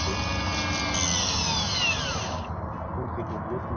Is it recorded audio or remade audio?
recorded